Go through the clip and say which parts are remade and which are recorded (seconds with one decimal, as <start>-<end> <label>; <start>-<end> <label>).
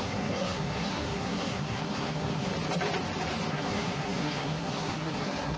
0.0-2.5 remade; 2.5-3.5 recorded; 3.5-5.6 remade